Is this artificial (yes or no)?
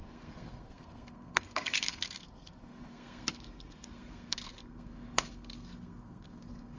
yes